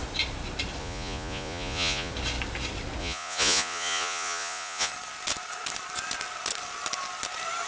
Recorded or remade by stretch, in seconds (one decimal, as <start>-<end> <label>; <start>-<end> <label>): 0.0-0.8 recorded; 0.8-2.1 remade; 2.1-3.0 recorded; 3.0-4.9 remade; 4.9-7.7 recorded